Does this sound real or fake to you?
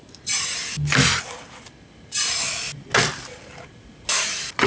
real